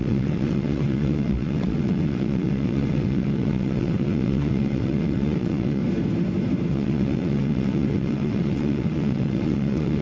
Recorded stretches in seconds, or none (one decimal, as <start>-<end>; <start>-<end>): 5.8-6.7